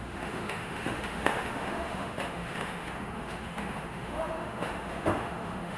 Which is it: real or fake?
fake